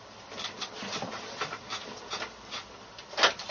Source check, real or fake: real